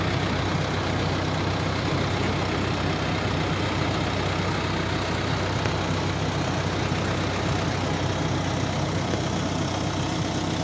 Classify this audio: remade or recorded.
recorded